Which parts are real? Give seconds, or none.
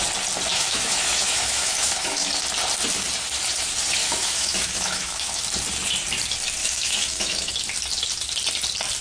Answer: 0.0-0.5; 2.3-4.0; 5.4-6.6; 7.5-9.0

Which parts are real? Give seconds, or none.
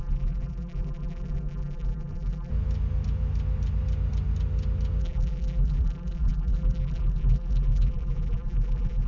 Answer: 2.5-5.0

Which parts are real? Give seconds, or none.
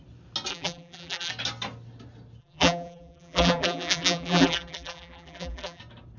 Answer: 0.0-0.5; 1.3-2.4; 5.8-6.2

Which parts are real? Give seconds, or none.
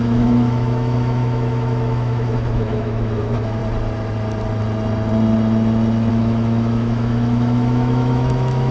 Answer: 3.6-6.1